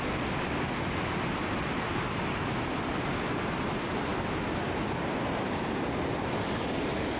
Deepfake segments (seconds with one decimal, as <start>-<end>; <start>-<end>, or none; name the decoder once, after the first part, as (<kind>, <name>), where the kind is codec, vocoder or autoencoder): none